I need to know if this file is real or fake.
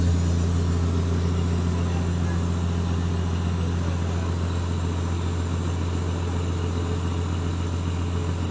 real